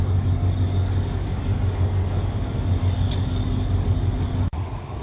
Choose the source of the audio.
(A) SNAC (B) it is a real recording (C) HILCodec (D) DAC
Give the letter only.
D